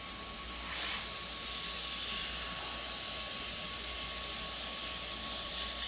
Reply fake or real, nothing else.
real